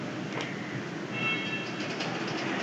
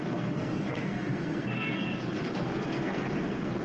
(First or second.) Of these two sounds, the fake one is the second